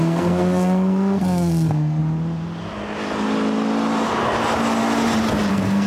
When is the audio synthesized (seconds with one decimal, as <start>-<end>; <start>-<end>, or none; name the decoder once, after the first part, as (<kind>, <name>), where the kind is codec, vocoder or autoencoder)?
0.0-2.0 (codec, SNAC); 5.5-5.9